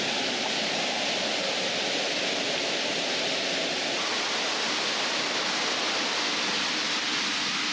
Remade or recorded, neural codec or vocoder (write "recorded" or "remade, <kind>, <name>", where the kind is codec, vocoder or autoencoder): recorded